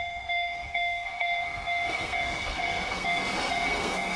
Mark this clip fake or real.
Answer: fake